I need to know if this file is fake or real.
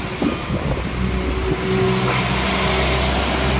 real